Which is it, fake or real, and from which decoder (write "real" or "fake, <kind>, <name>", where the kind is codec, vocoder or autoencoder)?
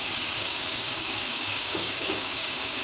fake, codec, DAC